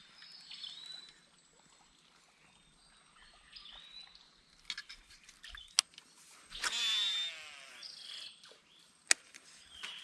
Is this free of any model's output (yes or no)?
yes